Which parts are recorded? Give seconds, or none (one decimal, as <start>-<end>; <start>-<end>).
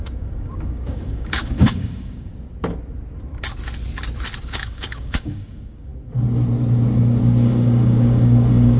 2.3-4.4; 5.9-7.2